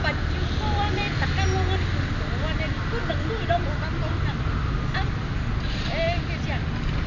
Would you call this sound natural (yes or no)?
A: yes